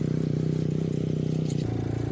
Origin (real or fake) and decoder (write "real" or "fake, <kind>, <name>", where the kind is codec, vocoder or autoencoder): real